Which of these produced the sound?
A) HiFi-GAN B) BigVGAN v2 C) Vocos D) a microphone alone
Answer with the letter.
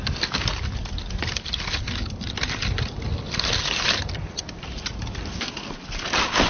D